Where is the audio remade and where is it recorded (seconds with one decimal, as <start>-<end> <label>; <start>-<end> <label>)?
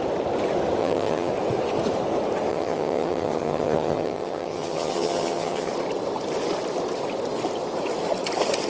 0.0-0.8 recorded; 0.8-1.3 remade; 1.3-2.5 recorded; 2.5-5.7 remade; 5.7-8.7 recorded